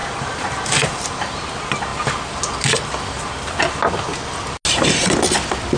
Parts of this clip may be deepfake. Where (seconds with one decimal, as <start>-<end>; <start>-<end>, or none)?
0.0-1.5